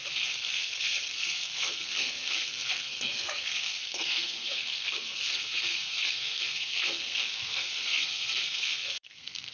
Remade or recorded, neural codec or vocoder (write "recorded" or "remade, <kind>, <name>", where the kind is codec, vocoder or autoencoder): remade, codec, SNAC